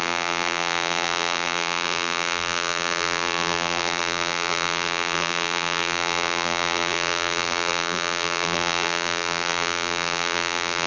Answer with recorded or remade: remade